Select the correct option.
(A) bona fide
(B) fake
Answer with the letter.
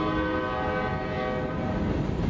A